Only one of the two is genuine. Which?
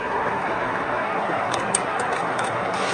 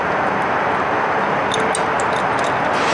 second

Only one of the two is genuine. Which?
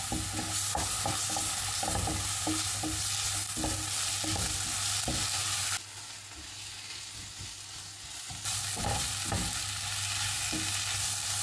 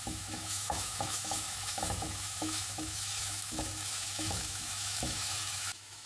first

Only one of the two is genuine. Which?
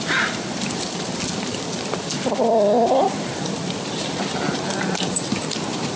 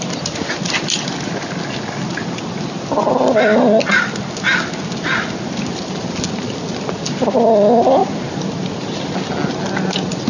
second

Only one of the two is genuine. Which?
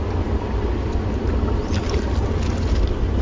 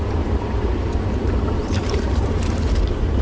first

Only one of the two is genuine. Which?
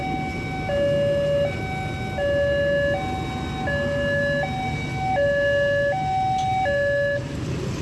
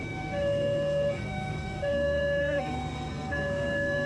first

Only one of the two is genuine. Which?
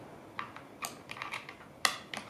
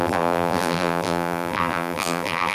first